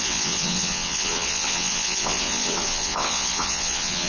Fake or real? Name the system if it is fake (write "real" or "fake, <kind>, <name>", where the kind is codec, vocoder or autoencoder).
fake, vocoder, WaveNeXt